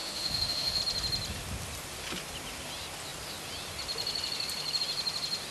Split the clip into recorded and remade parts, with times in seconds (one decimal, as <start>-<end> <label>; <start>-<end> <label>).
0.0-0.8 remade; 0.8-5.5 recorded